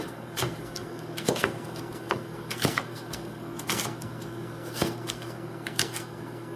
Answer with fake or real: fake